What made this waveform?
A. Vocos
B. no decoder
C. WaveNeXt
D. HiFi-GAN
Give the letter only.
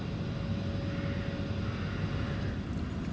B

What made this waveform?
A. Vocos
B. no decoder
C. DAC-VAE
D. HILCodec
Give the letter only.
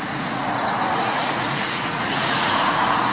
A